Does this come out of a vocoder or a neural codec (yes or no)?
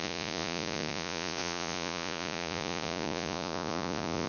yes